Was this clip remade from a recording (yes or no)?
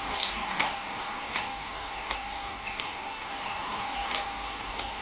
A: yes